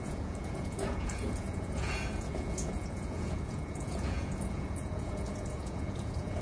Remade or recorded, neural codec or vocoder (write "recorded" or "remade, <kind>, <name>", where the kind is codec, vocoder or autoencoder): remade, vocoder, Vocos